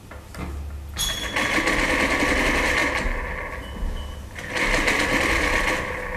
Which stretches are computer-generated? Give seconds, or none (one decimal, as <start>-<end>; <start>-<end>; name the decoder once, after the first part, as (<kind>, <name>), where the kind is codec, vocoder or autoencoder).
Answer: none

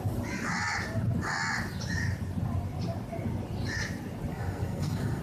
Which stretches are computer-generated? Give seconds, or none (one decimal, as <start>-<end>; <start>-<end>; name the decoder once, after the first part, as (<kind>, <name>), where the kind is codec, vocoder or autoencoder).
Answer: 4.3-5.2 (codec, SNAC)